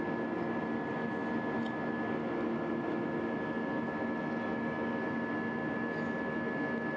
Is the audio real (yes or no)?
yes